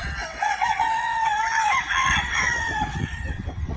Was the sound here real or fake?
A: fake